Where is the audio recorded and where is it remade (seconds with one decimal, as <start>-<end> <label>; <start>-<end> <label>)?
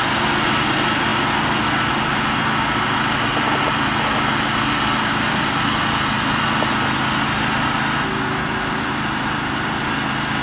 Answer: 0.0-10.4 recorded